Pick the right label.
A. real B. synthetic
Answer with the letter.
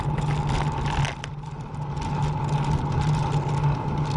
A